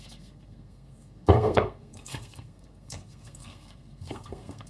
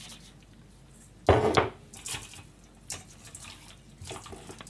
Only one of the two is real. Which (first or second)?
second